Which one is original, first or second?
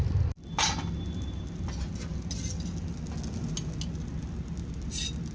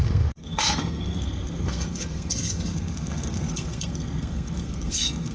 first